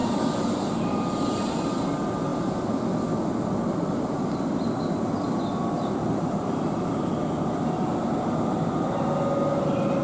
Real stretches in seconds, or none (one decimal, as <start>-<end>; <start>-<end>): 1.0-10.0

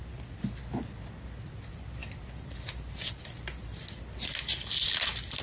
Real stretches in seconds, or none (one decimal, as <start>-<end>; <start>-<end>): 0.0-5.4

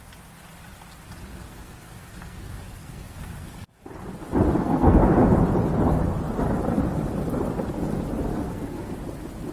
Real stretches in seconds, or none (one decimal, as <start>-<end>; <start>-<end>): 0.0-1.3; 3.8-4.6; 5.2-8.3; 8.9-9.5

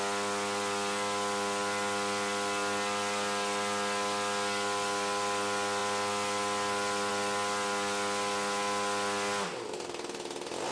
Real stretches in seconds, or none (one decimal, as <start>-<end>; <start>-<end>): 0.0-10.7

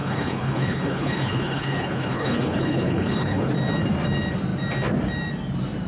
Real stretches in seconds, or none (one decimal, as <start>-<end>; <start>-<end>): 3.5-5.9

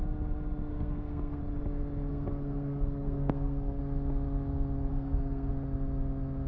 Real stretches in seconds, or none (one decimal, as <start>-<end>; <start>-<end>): 0.0-0.7; 1.4-2.1; 3.8-4.9; 5.5-6.5